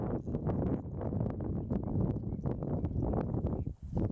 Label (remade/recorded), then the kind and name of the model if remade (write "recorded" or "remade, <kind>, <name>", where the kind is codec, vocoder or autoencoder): recorded